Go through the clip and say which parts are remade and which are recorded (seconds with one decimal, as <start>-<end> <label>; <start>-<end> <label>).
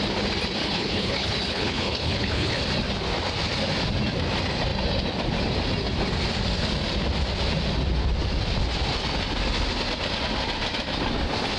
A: 0.0-0.6 recorded; 0.6-2.6 remade; 2.6-11.6 recorded